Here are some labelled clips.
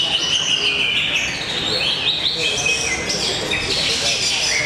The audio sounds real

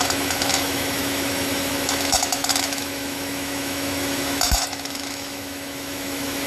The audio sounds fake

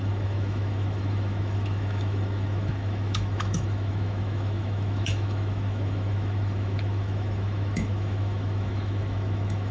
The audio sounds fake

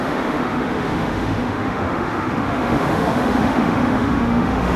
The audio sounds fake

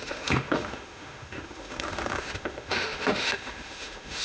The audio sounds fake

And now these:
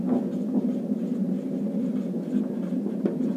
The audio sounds real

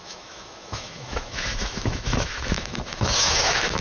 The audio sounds fake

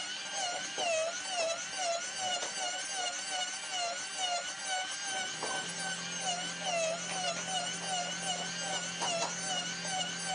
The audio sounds real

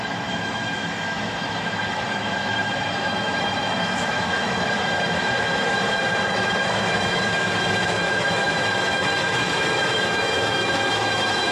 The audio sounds fake